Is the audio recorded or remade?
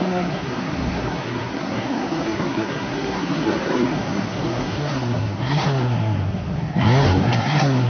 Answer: remade